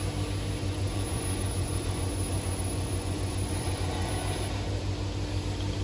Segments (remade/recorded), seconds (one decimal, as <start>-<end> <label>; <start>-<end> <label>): 0.0-0.6 recorded; 0.6-4.1 remade; 4.1-5.8 recorded